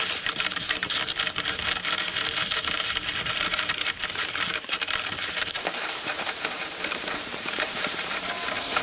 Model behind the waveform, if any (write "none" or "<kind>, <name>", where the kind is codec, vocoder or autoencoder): vocoder, BigVGAN v2